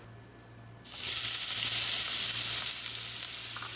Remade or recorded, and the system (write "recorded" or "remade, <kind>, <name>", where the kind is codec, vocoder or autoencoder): recorded